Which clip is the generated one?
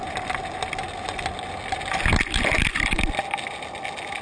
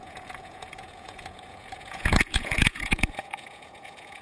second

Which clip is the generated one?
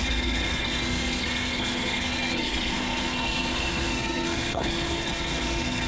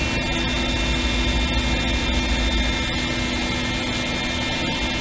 first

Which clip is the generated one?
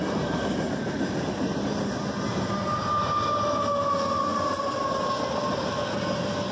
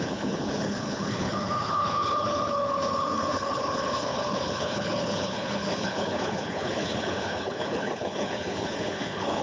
second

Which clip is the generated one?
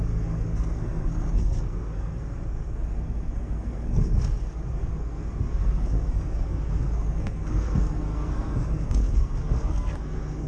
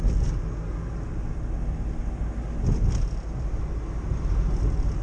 first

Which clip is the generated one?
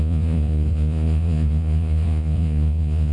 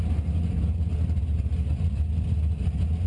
first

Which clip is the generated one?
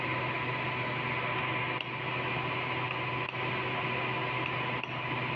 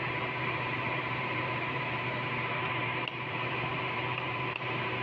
second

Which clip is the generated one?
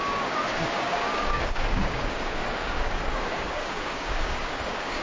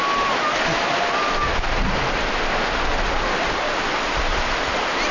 first